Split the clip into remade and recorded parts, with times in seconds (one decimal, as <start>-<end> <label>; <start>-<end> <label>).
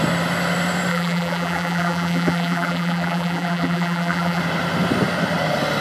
0.0-0.9 recorded; 0.9-4.4 remade; 4.4-5.8 recorded